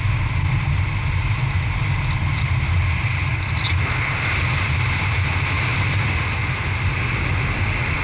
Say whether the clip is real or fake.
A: real